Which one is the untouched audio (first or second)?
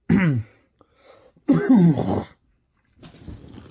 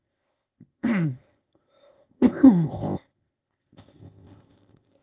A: first